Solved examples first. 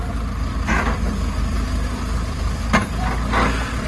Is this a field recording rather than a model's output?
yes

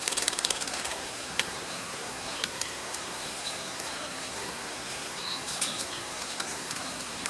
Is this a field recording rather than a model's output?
no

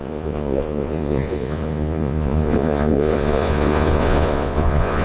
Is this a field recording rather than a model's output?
no